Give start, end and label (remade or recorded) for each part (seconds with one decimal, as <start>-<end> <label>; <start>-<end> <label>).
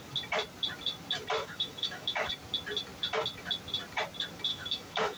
0.0-1.4 recorded; 1.4-2.3 remade; 2.3-4.5 recorded; 4.5-5.2 remade